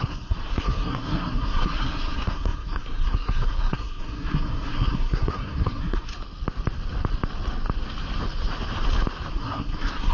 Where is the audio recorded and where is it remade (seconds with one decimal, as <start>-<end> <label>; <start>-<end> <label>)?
0.0-6.1 remade; 6.1-9.3 recorded; 9.3-10.1 remade